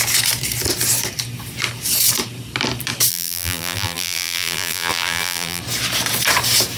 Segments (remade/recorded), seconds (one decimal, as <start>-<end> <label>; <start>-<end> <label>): 0.0-3.1 recorded; 3.1-5.6 remade; 5.6-6.8 recorded